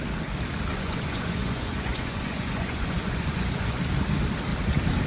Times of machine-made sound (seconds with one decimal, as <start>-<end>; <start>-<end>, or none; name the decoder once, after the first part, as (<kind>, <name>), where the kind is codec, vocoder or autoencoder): 0.7-3.8 (vocoder, Vocos)